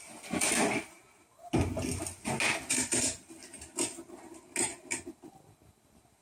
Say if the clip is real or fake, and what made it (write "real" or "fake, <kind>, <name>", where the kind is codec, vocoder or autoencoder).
real